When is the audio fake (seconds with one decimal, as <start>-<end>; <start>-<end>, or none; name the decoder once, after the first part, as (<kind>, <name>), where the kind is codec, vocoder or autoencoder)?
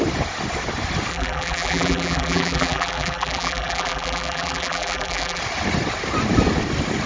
1.1-5.4 (vocoder, BigVGAN v2)